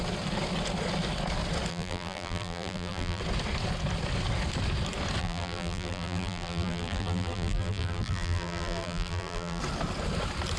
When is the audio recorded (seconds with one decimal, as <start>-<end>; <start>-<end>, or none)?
0.0-1.7; 3.2-5.2; 9.6-10.6